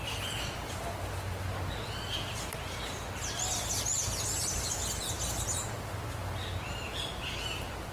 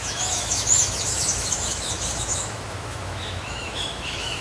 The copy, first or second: second